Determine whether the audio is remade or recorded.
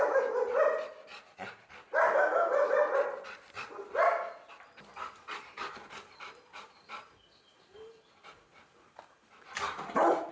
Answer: recorded